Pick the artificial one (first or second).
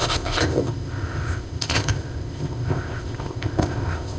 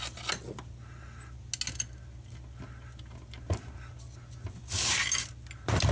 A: first